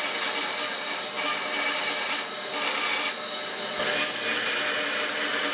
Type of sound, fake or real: real